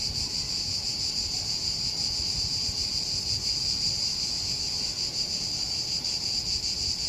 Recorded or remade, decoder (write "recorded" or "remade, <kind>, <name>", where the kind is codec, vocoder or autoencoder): remade, vocoder, BigVGAN v2